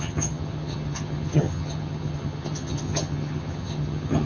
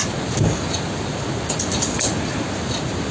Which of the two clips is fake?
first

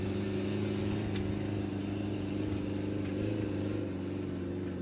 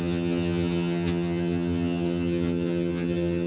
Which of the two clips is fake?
second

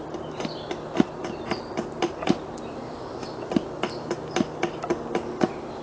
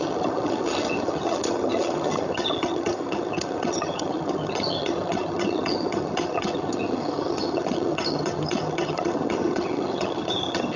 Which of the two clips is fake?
second